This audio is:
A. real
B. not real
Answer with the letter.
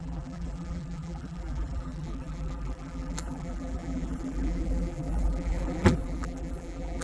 B